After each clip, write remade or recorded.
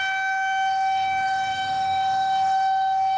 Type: remade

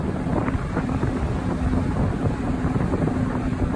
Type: recorded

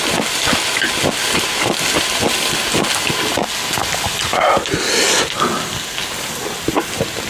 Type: recorded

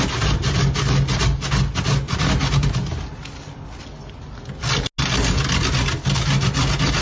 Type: recorded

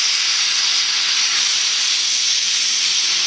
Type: recorded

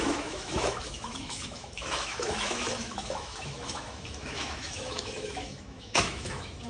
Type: remade